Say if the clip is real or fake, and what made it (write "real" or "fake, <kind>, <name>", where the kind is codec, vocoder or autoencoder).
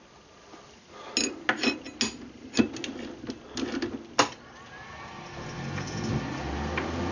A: real